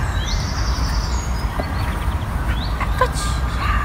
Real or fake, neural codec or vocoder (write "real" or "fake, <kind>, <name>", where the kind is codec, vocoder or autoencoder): real